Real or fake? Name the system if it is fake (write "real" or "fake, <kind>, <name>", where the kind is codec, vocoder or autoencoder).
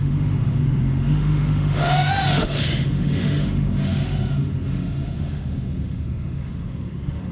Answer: fake, autoencoder, DAC-VAE